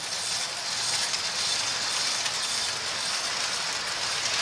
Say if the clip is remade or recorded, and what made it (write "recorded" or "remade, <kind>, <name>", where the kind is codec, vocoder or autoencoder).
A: recorded